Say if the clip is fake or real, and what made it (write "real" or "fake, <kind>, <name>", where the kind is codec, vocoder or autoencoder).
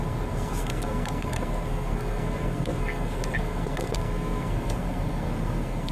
fake, codec, SNAC